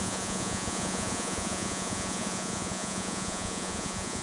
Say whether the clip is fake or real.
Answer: fake